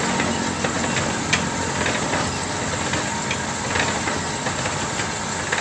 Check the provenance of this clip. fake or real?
real